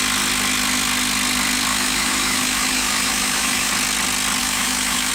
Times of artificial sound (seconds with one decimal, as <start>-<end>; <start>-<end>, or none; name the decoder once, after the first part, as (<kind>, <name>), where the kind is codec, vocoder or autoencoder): 1.7-3.7 (autoencoder, DAC-VAE); 4.4-5.1